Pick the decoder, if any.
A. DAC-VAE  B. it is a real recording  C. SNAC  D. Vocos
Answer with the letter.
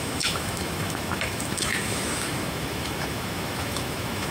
A